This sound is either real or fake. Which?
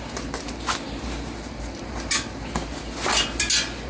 real